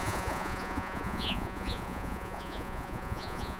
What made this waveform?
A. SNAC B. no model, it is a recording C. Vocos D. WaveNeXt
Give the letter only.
C